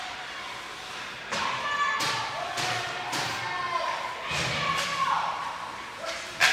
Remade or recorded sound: recorded